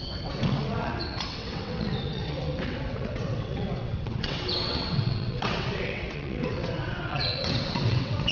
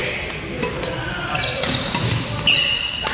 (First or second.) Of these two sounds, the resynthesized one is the first